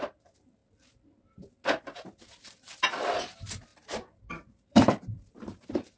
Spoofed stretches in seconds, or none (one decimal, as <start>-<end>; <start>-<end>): 3.7-6.0